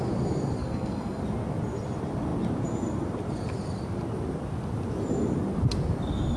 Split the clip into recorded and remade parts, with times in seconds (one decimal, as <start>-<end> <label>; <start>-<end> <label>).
0.0-0.6 recorded; 0.6-1.2 remade; 1.2-6.4 recorded